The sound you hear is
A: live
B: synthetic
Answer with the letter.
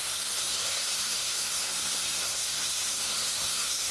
B